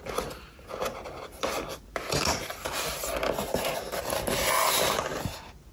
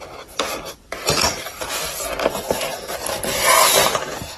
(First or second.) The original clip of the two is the first